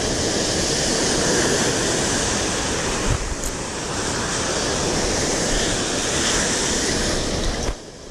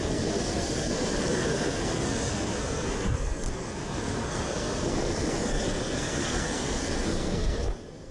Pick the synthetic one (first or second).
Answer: second